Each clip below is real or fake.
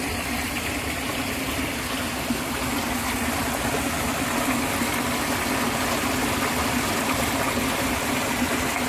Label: real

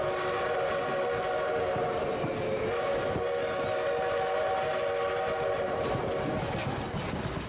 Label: real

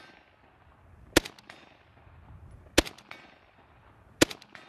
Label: real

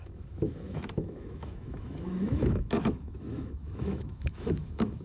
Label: fake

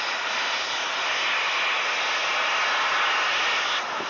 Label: real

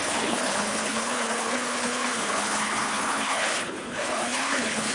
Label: fake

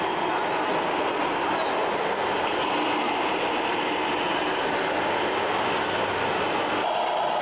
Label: real